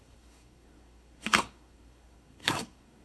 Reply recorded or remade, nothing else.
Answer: remade